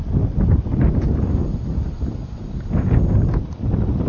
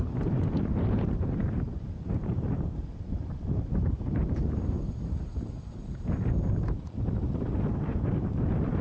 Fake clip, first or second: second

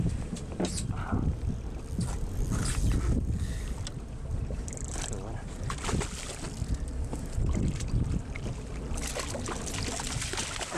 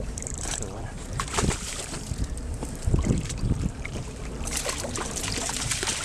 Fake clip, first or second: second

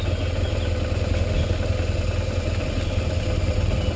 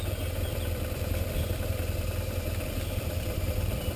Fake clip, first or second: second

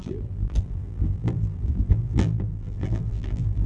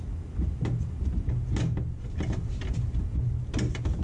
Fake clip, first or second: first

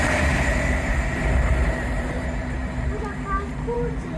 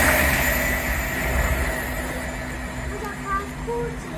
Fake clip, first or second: first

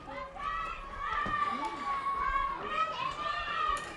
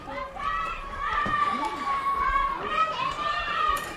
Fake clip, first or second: second